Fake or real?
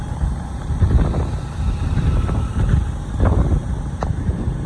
real